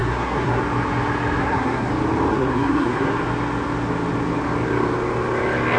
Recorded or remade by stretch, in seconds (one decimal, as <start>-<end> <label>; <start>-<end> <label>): 0.0-0.6 remade; 0.6-1.4 recorded; 1.4-1.9 remade; 1.9-2.3 recorded; 2.3-3.1 remade; 3.1-5.8 recorded